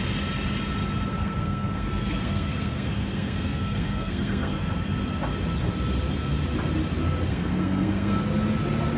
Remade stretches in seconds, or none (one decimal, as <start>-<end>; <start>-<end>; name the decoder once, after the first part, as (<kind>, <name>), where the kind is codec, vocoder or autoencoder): 1.1-4.7 (codec, SNAC); 7.3-8.2